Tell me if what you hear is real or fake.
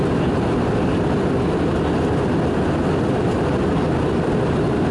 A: real